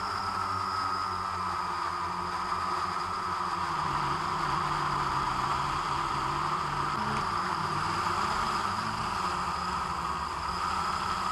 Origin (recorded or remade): recorded